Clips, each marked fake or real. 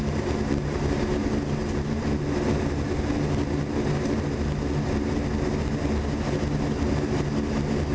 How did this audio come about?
real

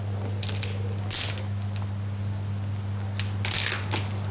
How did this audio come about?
real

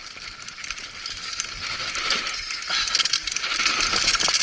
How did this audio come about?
real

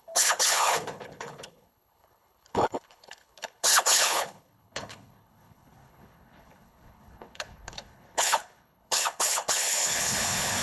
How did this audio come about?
fake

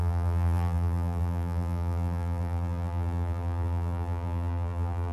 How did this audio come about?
fake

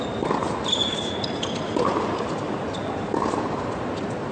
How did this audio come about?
real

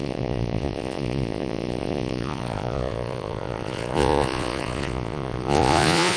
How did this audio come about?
fake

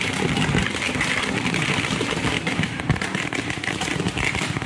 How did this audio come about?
real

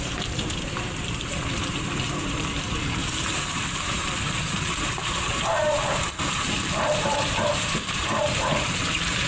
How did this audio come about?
fake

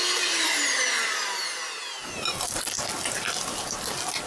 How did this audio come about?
real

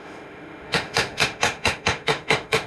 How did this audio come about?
fake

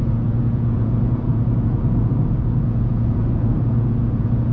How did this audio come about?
fake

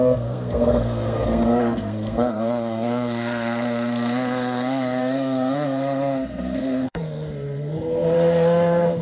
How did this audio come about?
fake